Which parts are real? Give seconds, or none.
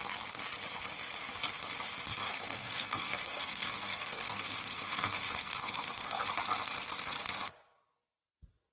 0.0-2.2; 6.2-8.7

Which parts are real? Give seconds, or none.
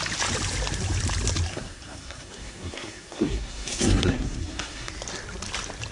0.0-1.5; 4.9-5.9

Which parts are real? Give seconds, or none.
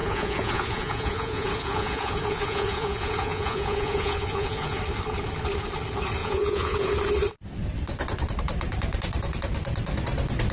4.8-6.2; 6.9-10.5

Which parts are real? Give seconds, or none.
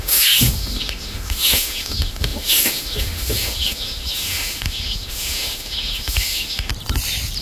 6.7-7.4